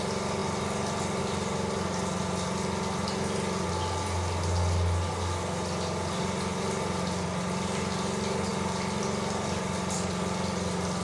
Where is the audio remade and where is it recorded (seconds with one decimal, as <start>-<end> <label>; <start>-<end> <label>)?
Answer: 0.0-11.0 recorded